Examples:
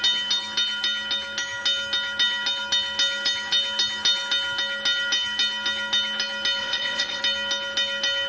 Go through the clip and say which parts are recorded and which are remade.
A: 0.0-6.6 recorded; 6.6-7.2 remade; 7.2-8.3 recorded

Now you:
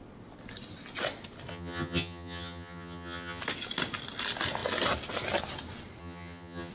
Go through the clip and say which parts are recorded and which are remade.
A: 0.0-1.5 recorded; 1.5-3.4 remade; 3.4-6.0 recorded; 6.0-6.7 remade

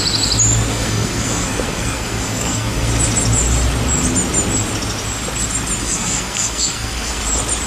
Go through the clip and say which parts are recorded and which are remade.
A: 0.0-0.7 recorded; 0.7-2.9 remade; 2.9-5.8 recorded; 5.8-7.2 remade; 7.2-7.7 recorded

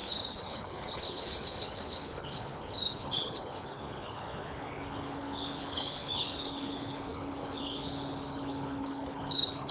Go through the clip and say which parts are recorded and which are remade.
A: 0.0-9.7 remade

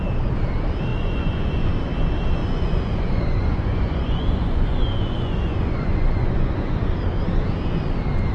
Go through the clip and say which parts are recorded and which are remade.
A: 0.0-0.9 recorded; 0.9-1.7 remade; 1.7-2.4 recorded; 2.4-6.9 remade; 6.9-8.3 recorded

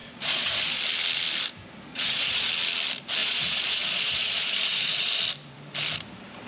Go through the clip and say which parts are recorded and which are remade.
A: 0.0-0.8 remade; 0.8-1.9 recorded; 1.9-2.5 remade; 2.5-3.2 recorded; 3.2-5.2 remade; 5.2-6.5 recorded

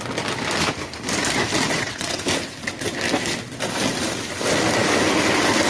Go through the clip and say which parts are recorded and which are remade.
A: 0.0-1.7 recorded; 1.7-2.2 remade; 2.2-5.7 recorded

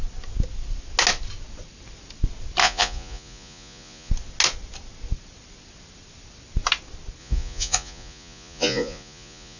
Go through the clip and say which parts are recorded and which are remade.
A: 0.0-2.6 recorded; 2.6-4.1 remade; 4.1-7.2 recorded; 7.2-9.6 remade